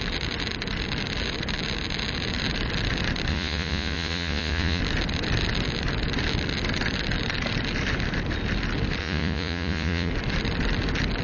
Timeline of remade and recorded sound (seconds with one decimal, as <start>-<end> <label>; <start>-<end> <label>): 0.0-3.3 recorded; 3.3-4.8 remade; 4.8-9.0 recorded; 9.0-10.1 remade; 10.1-11.2 recorded